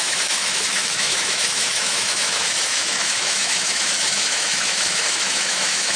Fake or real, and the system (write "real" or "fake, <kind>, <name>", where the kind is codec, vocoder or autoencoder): fake, autoencoder, DAC-VAE